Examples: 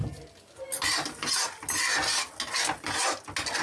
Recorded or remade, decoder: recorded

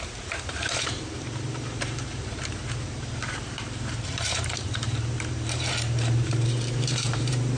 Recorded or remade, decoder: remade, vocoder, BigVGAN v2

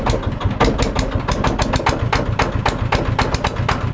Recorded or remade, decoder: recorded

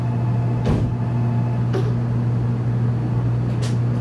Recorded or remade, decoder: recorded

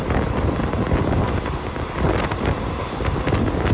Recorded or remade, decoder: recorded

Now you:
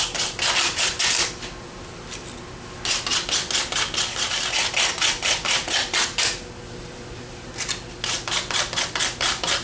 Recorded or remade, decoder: recorded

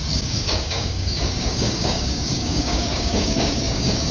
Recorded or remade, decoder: remade, codec, DAC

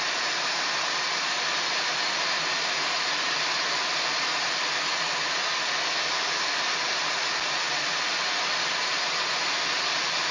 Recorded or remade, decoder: recorded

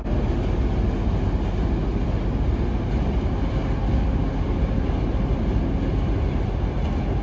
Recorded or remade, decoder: recorded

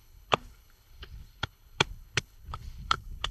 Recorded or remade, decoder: remade, codec, HILCodec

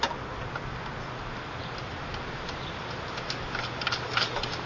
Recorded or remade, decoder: recorded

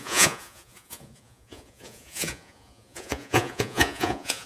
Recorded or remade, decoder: remade, vocoder, Vocos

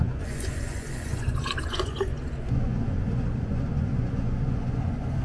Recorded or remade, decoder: remade, vocoder, Vocos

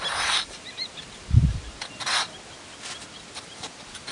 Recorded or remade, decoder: recorded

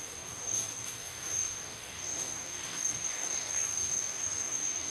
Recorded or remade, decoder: remade, codec, DAC